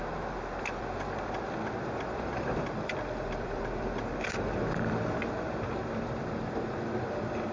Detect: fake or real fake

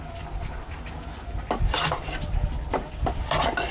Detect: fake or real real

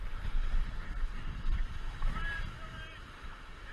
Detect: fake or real real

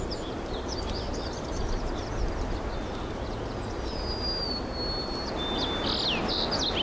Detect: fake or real real